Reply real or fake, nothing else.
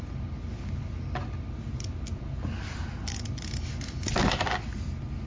real